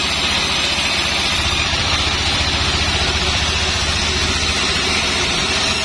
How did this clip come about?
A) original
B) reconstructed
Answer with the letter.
B